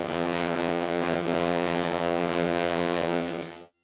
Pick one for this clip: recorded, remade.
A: remade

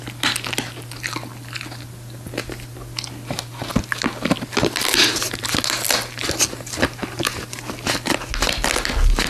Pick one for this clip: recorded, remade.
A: recorded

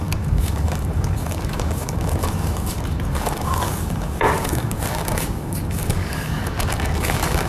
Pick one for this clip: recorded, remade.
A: remade